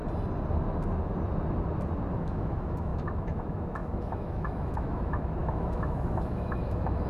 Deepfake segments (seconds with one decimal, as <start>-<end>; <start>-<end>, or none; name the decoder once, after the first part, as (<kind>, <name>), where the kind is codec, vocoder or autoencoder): 2.1-7.1 (autoencoder, DAC-VAE)